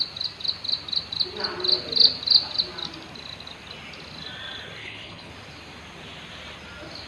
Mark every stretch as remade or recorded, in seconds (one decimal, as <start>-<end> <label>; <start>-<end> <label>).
0.0-4.8 recorded; 4.8-5.3 remade; 5.3-7.1 recorded

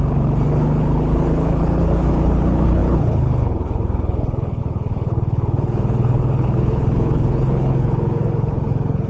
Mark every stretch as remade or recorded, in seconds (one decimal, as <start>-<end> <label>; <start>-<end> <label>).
0.0-9.1 remade

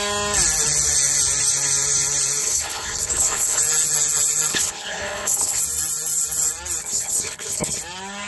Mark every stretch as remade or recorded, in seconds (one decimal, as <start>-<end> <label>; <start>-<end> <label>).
0.0-2.4 recorded; 2.4-3.6 remade; 3.6-4.5 recorded; 4.5-5.6 remade; 5.6-6.8 recorded; 6.8-7.8 remade; 7.8-8.3 recorded

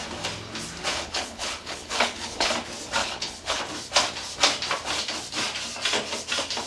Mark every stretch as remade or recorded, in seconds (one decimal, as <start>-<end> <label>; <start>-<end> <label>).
0.0-0.9 recorded; 0.9-2.5 remade; 2.5-3.0 recorded; 3.0-3.6 remade; 3.6-6.7 recorded

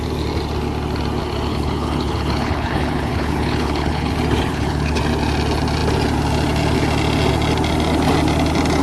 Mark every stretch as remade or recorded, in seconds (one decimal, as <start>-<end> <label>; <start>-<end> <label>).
0.0-1.5 recorded; 1.5-4.1 remade; 4.1-4.5 recorded; 4.5-5.0 remade; 5.0-8.8 recorded

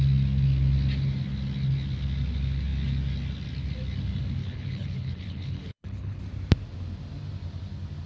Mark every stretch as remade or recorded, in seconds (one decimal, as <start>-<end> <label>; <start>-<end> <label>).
0.0-4.4 recorded; 4.4-6.2 remade; 6.2-8.1 recorded